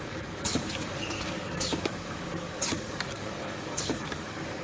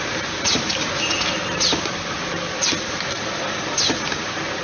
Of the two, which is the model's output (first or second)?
first